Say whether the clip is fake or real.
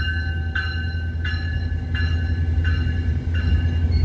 real